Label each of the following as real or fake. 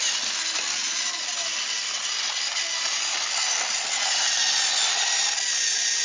real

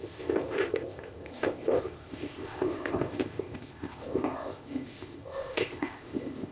fake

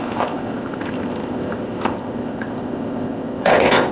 fake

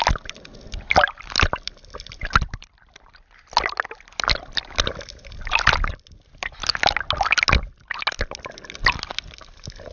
real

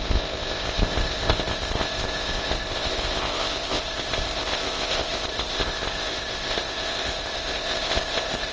fake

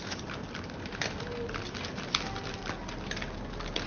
real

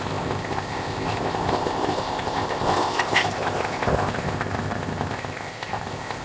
fake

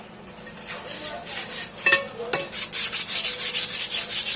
real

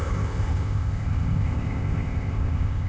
fake